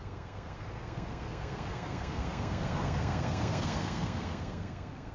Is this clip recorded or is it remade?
remade